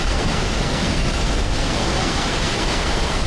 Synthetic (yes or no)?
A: yes